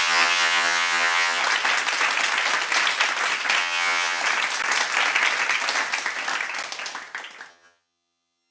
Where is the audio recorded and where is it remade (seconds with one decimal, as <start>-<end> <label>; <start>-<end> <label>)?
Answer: 0.0-1.4 remade; 1.4-3.6 recorded; 3.6-4.2 remade; 4.2-7.5 recorded; 7.5-8.5 remade